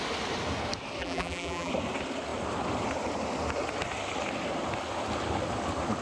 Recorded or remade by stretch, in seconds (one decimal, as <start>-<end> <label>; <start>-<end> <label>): 0.0-1.0 recorded; 1.0-1.7 remade; 1.7-6.0 recorded